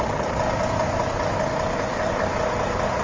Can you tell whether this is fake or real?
real